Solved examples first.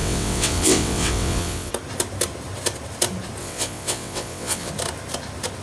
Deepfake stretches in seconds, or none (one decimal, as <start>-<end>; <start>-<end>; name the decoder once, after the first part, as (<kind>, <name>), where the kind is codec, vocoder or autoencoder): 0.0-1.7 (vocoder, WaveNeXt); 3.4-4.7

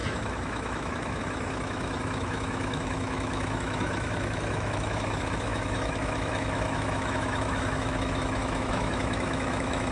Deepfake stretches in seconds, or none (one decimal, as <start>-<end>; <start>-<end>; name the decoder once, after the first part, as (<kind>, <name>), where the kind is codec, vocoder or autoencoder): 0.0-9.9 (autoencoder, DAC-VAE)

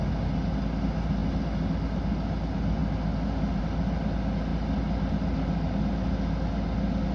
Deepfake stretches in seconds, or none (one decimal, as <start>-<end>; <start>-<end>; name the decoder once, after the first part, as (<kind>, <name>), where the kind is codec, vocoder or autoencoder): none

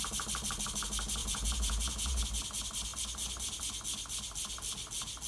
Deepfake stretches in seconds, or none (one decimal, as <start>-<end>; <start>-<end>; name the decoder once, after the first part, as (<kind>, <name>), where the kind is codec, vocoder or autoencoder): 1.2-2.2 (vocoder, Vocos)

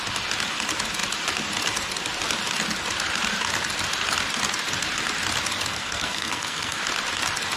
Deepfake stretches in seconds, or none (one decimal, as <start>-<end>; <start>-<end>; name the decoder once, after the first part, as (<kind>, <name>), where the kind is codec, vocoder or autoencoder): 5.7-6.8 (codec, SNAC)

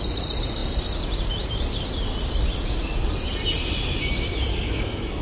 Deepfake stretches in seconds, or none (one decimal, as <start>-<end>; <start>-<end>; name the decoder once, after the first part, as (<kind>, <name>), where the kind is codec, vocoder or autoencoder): 4.5-5.2 (codec, SNAC)